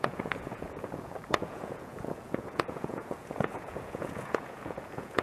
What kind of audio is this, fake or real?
fake